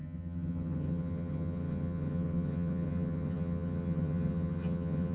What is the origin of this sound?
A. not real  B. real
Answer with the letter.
A